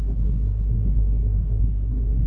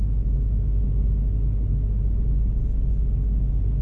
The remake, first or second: first